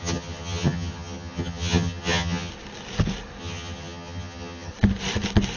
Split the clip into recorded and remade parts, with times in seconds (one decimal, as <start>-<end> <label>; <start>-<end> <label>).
0.0-2.5 remade; 2.5-3.4 recorded; 3.4-4.7 remade; 4.7-5.6 recorded